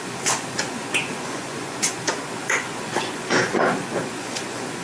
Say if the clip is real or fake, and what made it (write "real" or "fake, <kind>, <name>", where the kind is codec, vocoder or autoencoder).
fake, vocoder, Vocos